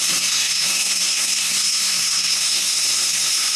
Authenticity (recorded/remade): remade